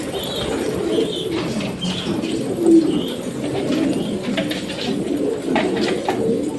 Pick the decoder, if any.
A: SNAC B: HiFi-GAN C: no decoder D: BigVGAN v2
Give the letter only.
C